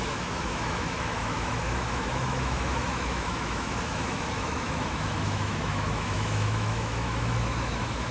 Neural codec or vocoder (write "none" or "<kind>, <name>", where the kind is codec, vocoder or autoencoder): autoencoder, DAC-VAE